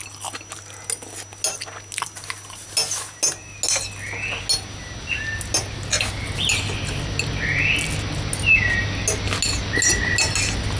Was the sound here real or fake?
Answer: real